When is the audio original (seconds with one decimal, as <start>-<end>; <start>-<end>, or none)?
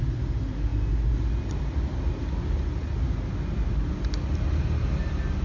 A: 0.0-5.4